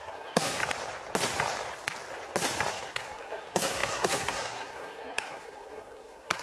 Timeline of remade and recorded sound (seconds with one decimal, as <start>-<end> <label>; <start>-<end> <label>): 0.0-0.6 remade; 0.6-2.7 recorded; 2.7-6.4 remade